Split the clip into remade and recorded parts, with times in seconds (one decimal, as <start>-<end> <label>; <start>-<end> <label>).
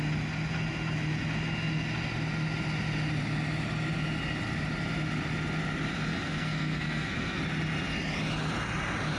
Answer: 0.0-6.1 recorded; 6.1-7.4 remade; 7.4-9.2 recorded